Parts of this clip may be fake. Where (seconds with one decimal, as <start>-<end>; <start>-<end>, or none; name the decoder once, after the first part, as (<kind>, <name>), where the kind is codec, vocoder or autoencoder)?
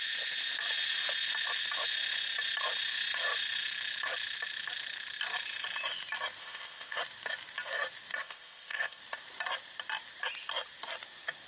6.4-7.0 (codec, ZipCodec); 8.2-9.0